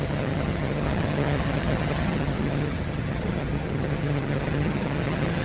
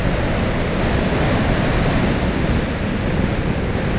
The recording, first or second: second